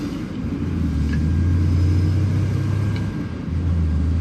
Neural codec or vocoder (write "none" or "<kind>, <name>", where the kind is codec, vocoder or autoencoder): none